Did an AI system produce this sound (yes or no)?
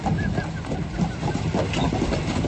no